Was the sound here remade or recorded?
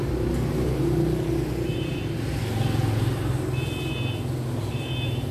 recorded